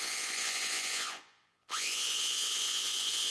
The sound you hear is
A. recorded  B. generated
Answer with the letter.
B